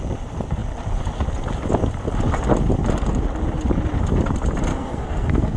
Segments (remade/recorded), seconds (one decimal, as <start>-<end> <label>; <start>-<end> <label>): 0.0-4.7 recorded; 4.7-5.6 remade